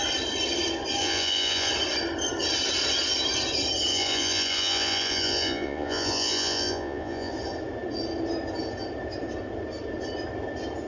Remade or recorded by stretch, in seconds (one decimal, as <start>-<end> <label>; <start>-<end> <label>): 0.0-1.0 recorded; 1.0-1.7 remade; 1.7-3.9 recorded; 3.9-7.3 remade; 7.3-10.9 recorded